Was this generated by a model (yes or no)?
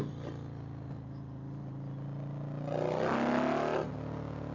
no